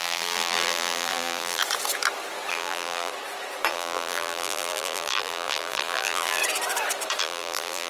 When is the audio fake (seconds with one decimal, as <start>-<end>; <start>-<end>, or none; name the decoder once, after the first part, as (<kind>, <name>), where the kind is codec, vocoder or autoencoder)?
0.0-1.6 (vocoder, BigVGAN v2); 2.5-3.1; 3.7-6.4; 7.2-7.9